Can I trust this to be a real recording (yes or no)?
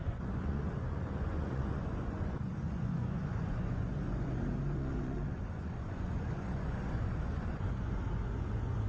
no